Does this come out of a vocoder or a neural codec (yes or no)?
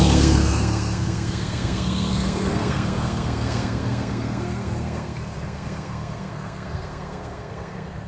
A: yes